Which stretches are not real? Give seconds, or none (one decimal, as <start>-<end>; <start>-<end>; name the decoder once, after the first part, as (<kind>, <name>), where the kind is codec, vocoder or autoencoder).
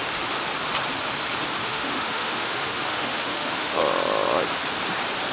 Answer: 1.6-3.8 (autoencoder, DAC-VAE)